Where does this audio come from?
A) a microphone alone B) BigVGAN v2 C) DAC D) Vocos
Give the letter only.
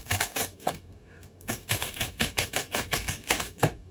C